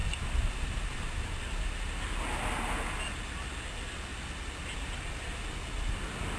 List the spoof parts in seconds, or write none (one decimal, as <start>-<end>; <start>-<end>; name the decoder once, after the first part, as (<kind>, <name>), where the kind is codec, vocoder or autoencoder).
0.0-2.9 (vocoder, BigVGAN v2)